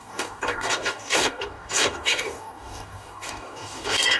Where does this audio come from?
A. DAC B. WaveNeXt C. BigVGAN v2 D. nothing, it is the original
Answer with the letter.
A